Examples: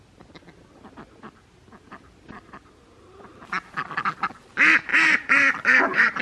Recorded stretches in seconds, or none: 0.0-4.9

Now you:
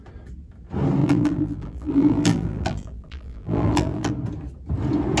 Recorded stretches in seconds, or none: 0.0-1.0; 4.1-5.2

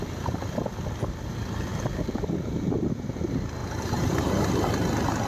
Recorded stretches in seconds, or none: 0.0-3.6; 4.5-5.3

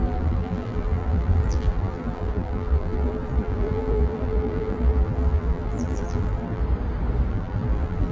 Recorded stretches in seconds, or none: 6.6-7.3

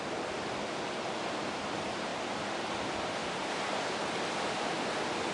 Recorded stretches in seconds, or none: 0.0-2.1; 2.7-3.2; 3.8-5.3